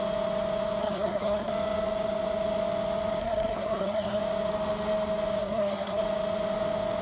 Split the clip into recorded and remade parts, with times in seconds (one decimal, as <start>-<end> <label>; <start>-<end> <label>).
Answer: 0.0-0.8 recorded; 0.8-1.5 remade; 1.5-3.2 recorded; 3.2-4.2 remade; 4.2-5.4 recorded; 5.4-6.0 remade; 6.0-7.0 recorded